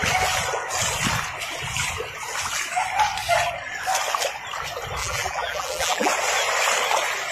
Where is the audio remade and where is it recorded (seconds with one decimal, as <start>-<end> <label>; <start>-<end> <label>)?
0.0-5.0 recorded; 5.0-6.1 remade; 6.1-7.3 recorded